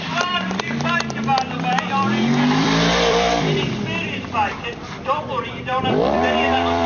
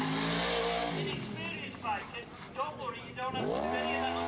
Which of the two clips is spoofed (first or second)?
first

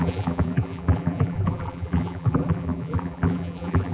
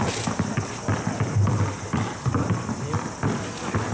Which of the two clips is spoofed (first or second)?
first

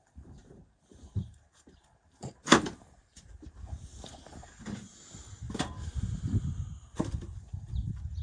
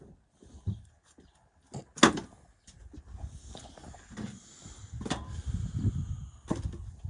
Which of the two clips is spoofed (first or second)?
first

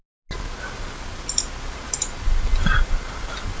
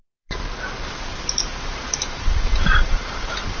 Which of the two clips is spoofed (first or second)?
second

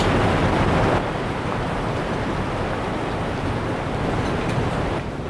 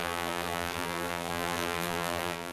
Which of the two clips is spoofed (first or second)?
second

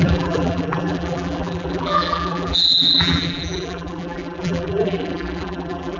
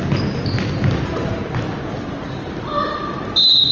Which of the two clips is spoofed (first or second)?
first